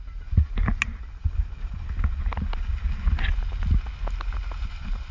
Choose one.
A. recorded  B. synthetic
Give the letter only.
A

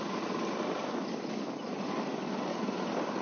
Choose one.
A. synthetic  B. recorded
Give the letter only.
B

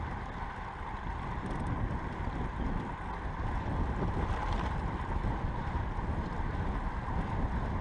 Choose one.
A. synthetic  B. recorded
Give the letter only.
B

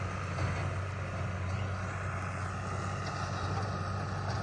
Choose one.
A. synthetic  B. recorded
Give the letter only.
B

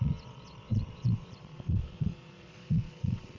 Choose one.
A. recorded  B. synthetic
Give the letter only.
B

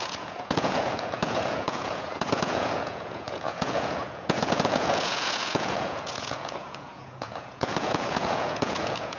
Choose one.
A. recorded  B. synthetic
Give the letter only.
B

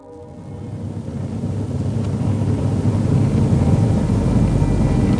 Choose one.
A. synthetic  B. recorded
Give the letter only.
B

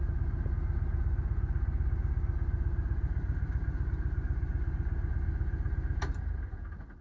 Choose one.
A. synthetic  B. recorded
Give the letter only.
B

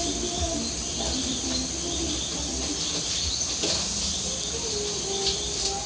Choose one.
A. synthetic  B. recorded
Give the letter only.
B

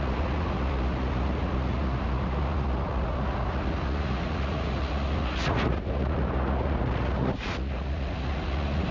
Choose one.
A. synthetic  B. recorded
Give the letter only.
A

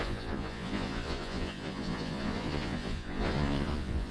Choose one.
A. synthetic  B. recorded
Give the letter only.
A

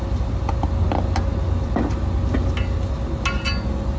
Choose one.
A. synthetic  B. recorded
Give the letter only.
B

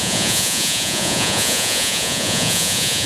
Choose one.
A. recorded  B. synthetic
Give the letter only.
B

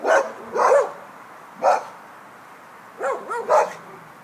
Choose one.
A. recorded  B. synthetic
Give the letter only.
A